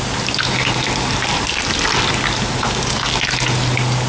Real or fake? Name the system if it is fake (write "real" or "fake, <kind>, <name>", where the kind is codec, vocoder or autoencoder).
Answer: real